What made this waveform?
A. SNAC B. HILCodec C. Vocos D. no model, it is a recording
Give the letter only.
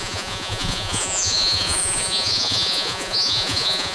C